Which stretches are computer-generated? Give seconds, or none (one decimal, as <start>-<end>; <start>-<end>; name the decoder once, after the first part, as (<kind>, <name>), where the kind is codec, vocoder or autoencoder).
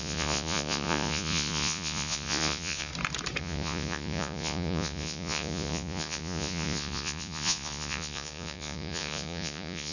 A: 0.0-2.9 (vocoder, Vocos); 3.4-9.9